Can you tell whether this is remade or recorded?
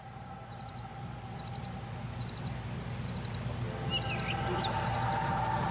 recorded